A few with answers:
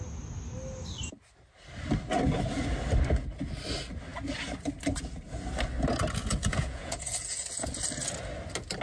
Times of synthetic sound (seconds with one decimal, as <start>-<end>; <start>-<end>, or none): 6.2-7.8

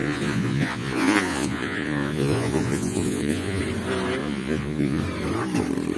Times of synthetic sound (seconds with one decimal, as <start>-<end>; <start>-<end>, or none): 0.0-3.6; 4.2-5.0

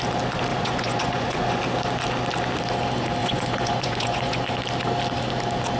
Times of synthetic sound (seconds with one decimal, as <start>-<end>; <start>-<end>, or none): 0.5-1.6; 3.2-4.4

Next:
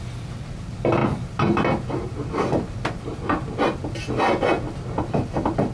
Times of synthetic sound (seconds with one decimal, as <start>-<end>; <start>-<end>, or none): none

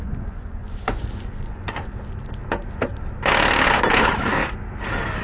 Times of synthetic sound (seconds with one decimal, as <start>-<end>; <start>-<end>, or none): 0.0-1.9

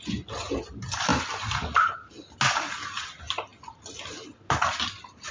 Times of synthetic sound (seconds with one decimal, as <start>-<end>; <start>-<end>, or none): none